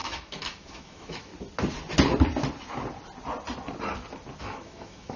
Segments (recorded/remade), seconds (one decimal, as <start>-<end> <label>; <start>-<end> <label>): 0.0-1.3 remade; 1.3-4.4 recorded; 4.4-5.2 remade